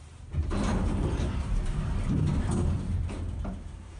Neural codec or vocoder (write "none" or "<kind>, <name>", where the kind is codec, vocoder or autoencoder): vocoder, BigVGAN v2